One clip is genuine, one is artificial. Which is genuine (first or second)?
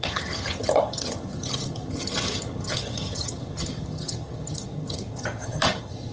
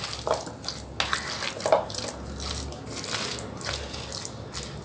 second